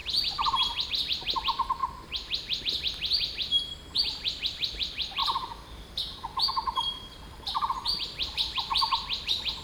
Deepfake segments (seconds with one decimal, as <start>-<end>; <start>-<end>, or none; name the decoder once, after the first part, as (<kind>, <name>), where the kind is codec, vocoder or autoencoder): 5.2-6.5 (vocoder, BigVGAN v2)